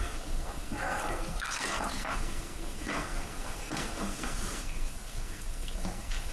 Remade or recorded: remade